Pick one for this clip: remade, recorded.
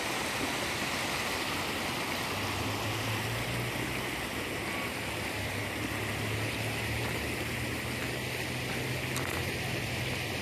recorded